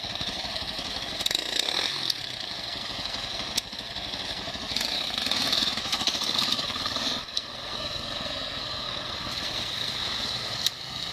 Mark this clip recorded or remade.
remade